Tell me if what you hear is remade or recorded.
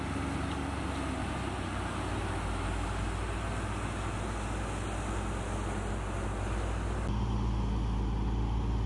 recorded